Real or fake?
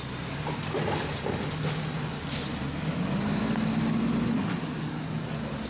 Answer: real